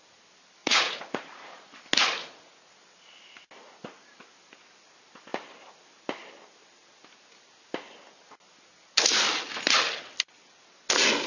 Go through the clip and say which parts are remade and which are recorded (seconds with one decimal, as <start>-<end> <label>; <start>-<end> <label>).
0.0-0.6 recorded; 0.6-1.7 remade; 1.7-2.2 recorded; 2.2-2.7 remade; 2.7-11.3 recorded